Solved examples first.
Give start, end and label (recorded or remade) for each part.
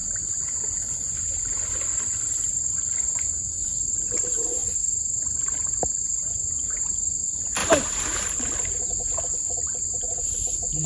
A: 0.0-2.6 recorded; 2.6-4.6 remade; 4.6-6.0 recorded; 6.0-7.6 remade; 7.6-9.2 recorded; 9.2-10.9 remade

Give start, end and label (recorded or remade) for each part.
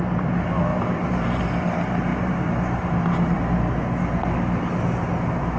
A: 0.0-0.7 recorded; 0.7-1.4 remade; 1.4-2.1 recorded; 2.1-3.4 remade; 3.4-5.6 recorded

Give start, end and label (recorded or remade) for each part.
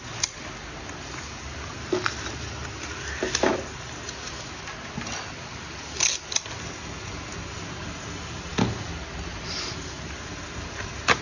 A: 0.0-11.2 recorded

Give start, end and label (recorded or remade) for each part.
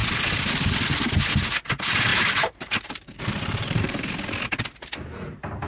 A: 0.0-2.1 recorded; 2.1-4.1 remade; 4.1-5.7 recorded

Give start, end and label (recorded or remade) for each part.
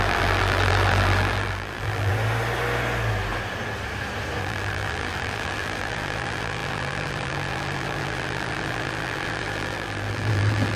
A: 0.0-2.1 remade; 2.1-4.4 recorded; 4.4-10.8 remade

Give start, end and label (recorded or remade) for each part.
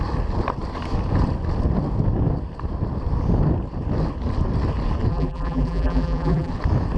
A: 0.0-5.1 recorded; 5.1-6.5 remade; 6.5-7.0 recorded